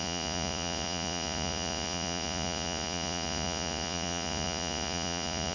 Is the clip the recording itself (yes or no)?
no